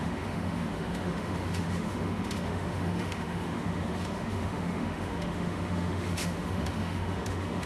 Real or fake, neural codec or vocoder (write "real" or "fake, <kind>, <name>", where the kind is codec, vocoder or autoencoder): fake, autoencoder, DAC-VAE